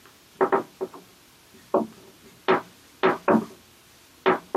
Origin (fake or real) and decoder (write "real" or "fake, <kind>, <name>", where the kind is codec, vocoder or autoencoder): real